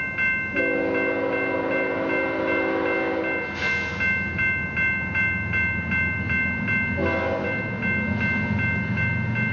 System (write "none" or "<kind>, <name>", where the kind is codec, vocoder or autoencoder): none